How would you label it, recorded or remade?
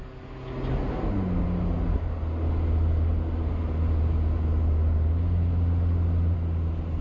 recorded